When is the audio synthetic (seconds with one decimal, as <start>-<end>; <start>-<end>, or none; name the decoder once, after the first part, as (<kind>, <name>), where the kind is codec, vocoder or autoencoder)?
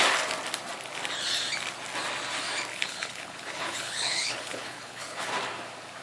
2.7-5.3 (codec, HILCodec)